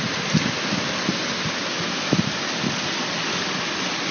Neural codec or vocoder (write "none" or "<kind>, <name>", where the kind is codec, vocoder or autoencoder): vocoder, BigVGAN v2